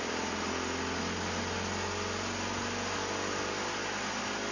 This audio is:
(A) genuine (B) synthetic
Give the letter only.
A